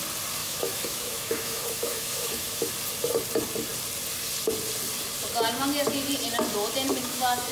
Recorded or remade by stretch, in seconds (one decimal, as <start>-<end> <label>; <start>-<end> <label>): 0.0-0.4 recorded; 0.4-2.7 remade; 2.7-6.9 recorded; 6.9-7.5 remade